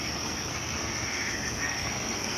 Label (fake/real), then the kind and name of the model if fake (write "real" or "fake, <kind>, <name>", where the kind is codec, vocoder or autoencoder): fake, codec, SNAC